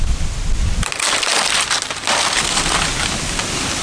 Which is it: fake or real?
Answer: real